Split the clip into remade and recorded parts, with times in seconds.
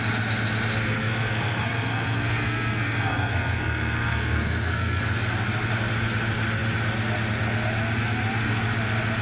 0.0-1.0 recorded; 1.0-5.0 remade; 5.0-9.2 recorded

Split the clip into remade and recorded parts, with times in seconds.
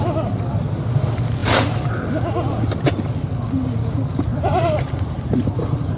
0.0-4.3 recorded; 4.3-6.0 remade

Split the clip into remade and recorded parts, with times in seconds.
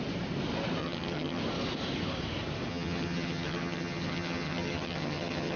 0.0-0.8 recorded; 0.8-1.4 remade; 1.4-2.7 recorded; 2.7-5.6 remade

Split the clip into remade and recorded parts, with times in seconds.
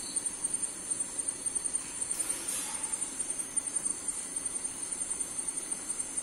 0.0-6.2 remade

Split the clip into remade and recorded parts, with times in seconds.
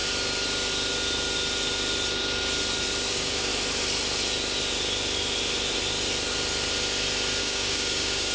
0.0-3.1 recorded; 3.1-3.5 remade; 3.5-7.4 recorded; 7.4-8.3 remade